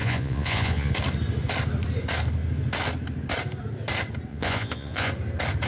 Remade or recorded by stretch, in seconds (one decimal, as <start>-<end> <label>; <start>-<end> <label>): 0.0-0.9 remade; 0.9-4.3 recorded; 4.3-5.1 remade; 5.1-5.7 recorded